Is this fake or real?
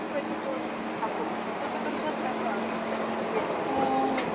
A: real